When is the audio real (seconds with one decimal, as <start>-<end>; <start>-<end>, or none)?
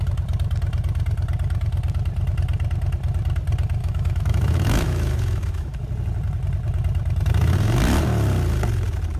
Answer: 0.0-3.8; 5.8-9.2